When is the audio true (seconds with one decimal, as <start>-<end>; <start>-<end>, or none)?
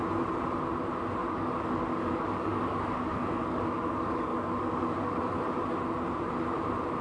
0.0-1.2; 5.4-7.0